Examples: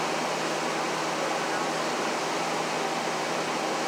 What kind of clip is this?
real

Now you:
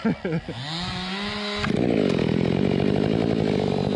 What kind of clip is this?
real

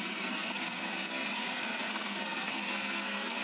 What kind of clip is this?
fake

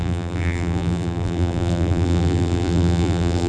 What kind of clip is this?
fake